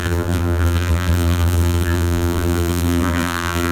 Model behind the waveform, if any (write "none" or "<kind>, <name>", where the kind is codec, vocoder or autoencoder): vocoder, BigVGAN v2